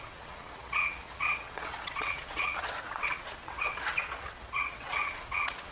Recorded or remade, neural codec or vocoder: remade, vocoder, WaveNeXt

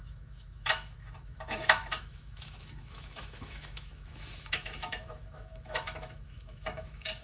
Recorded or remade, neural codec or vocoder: remade, autoencoder, DAC-VAE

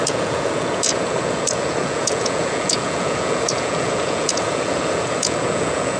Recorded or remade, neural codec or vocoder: remade, vocoder, Vocos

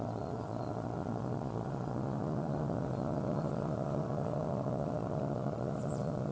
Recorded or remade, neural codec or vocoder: remade, vocoder, Vocos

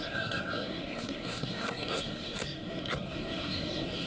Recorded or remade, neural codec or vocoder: remade, codec, SNAC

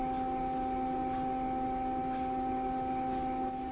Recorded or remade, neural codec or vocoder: recorded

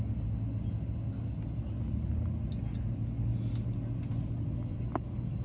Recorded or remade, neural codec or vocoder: recorded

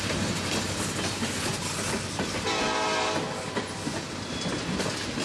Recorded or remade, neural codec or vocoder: recorded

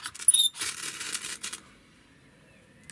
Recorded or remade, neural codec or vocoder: recorded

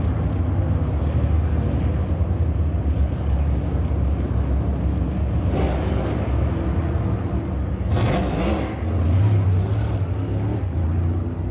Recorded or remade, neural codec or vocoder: recorded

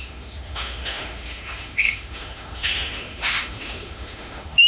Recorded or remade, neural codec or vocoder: remade, autoencoder, DAC-VAE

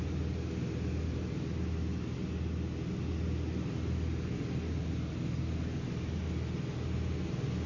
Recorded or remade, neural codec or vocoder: recorded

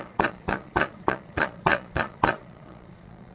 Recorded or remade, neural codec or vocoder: remade, vocoder, Vocos